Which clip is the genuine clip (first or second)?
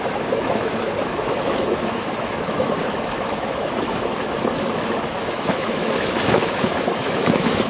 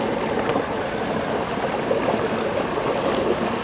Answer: second